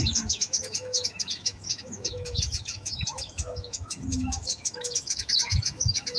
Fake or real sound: fake